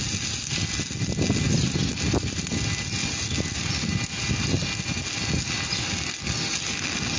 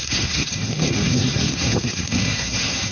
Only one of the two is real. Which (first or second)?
first